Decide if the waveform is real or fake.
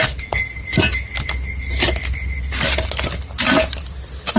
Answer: real